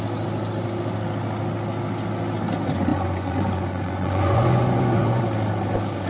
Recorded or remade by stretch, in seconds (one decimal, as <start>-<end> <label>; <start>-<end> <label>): 0.0-2.9 recorded; 2.9-5.2 remade; 5.2-6.1 recorded